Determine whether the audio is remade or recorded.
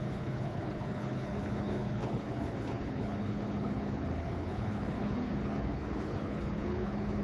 remade